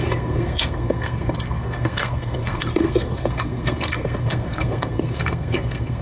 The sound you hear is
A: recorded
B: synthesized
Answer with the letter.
B